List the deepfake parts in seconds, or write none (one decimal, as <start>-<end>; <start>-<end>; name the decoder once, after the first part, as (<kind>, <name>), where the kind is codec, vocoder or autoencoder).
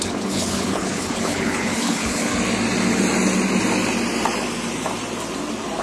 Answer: 0.0-2.3 (codec, HILCodec)